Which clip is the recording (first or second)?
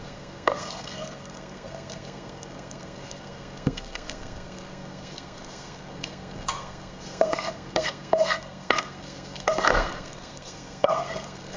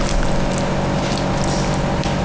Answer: second